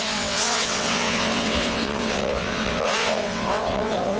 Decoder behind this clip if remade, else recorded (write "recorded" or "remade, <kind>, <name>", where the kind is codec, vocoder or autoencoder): remade, vocoder, WaveNeXt